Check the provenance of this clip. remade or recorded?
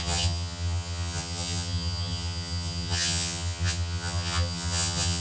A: remade